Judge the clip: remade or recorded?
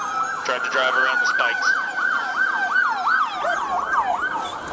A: recorded